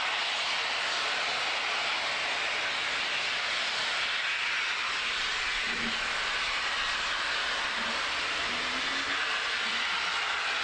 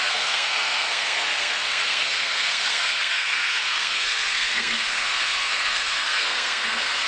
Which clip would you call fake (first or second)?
second